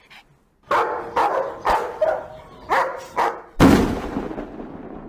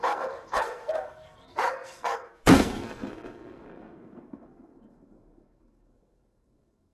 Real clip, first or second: first